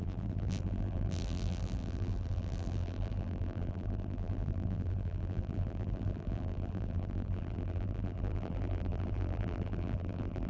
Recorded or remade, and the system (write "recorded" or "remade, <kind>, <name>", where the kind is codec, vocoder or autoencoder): remade, vocoder, BigVGAN v2